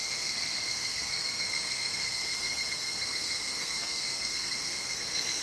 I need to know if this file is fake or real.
fake